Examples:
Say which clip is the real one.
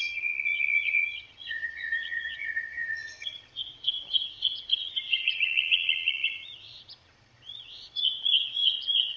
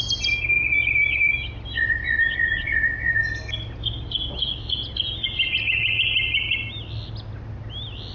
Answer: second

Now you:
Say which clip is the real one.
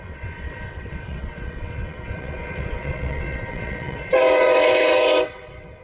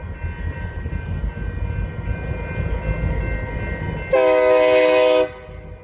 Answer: second